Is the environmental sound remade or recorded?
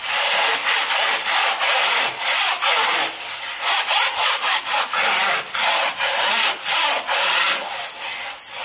recorded